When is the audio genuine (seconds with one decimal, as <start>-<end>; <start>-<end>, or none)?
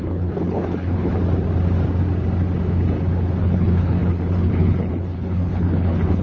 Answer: 1.1-3.4